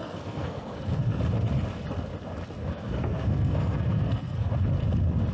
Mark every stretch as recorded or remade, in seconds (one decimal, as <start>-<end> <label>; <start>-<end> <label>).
0.0-1.2 remade; 1.2-2.6 recorded; 2.6-4.5 remade; 4.5-5.3 recorded